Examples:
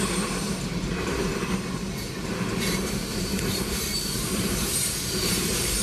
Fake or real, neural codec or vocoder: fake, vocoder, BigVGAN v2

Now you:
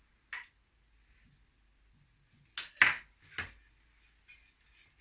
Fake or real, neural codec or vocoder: real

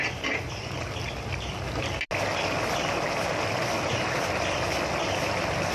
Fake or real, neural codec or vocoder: real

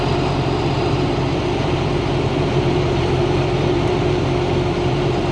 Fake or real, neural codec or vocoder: fake, vocoder, BigVGAN v2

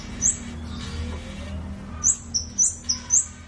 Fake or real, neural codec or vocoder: real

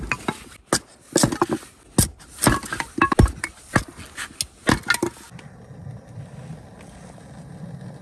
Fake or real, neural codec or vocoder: real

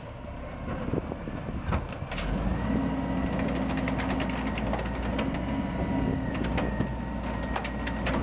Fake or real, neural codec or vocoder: real